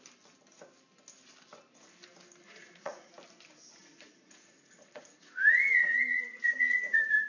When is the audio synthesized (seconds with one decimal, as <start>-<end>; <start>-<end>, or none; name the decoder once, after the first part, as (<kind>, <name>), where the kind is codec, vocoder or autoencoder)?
2.4-3.1 (vocoder, Vocos); 3.8-7.3